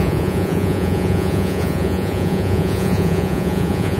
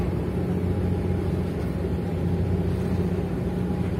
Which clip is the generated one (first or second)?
first